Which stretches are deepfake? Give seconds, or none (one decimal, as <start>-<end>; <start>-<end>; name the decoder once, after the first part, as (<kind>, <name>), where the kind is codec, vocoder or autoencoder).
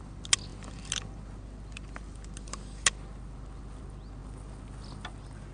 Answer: none